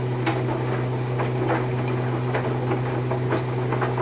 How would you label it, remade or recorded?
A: recorded